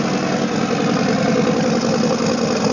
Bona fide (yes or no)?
yes